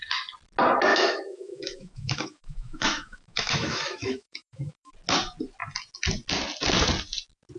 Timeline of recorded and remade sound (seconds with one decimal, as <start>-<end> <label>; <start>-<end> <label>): 0.0-0.9 recorded; 0.9-4.9 remade; 4.9-7.6 recorded